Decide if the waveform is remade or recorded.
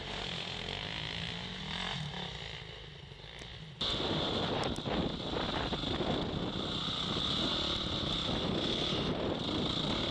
recorded